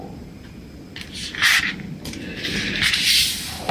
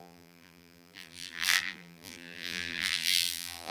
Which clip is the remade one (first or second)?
second